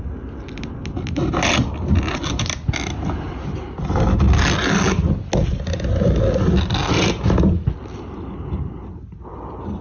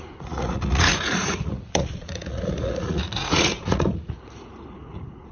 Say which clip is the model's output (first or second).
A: second